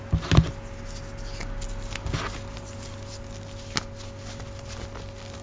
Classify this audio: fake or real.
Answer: real